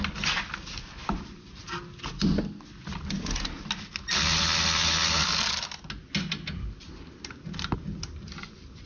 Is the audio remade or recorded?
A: recorded